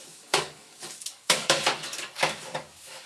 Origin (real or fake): fake